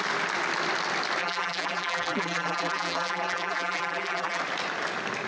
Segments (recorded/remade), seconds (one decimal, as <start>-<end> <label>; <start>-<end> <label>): 0.0-1.2 recorded; 1.2-4.4 remade; 4.4-5.3 recorded